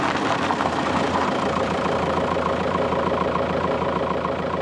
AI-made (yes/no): yes